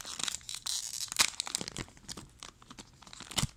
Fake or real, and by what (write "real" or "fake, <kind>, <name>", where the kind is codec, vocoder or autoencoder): real